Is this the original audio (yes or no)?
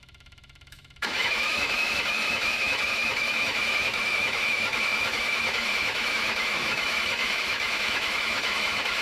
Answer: no